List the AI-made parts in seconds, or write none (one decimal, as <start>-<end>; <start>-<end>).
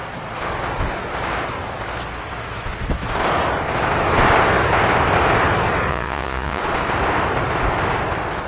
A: 5.9-6.6